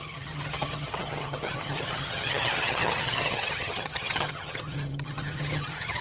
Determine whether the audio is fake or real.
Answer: fake